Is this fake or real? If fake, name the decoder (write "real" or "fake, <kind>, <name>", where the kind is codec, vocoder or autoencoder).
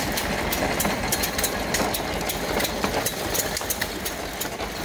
real